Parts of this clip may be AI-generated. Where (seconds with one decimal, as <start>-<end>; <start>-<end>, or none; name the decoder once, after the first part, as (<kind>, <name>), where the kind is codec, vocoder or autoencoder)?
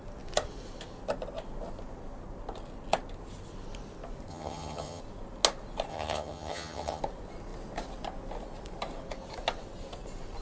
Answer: 4.3-5.0 (vocoder, HiFi-GAN); 5.9-7.0